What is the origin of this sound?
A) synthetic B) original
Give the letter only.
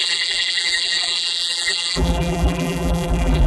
A